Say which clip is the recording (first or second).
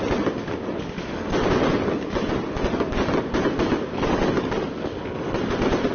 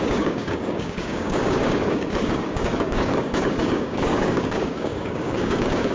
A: first